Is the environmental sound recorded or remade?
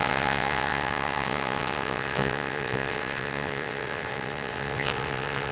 remade